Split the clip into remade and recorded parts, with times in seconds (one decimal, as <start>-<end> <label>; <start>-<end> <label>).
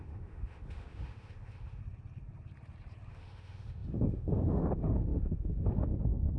0.0-1.8 remade; 1.8-3.1 recorded; 3.1-6.4 remade